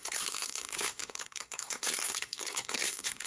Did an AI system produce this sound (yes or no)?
yes